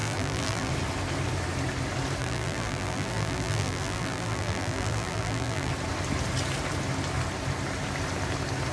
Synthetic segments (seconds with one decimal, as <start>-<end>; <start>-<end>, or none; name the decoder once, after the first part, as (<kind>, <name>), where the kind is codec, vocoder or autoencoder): 0.0-0.7 (vocoder, BigVGAN v2); 2.2-5.7